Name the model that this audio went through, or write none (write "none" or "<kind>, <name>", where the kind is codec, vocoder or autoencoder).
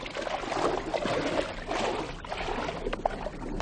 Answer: none